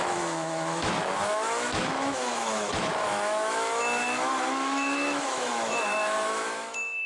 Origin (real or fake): fake